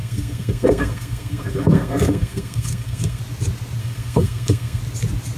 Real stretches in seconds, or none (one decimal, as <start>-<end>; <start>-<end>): 3.2-3.8; 4.8-5.4